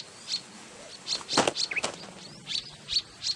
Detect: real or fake real